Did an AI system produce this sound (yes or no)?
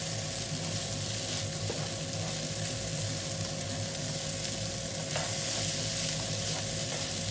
no